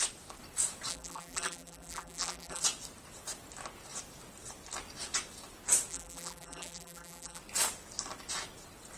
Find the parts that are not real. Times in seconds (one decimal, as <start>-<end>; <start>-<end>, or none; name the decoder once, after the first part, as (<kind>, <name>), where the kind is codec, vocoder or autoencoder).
0.9-2.6 (vocoder, BigVGAN v2); 5.9-7.4